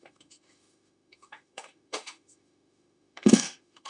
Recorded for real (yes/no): no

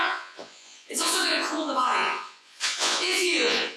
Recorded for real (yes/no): no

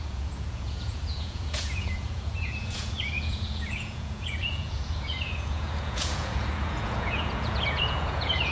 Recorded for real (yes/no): no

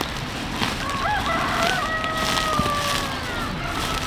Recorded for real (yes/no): yes